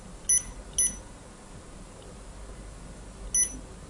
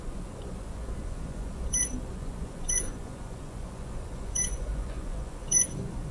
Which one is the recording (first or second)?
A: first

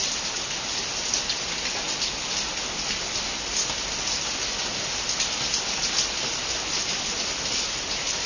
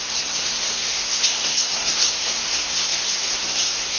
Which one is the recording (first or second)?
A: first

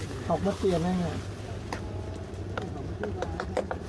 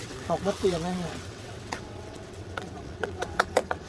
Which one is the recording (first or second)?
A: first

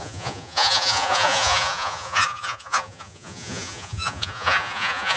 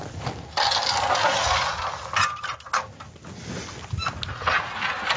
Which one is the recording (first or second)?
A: second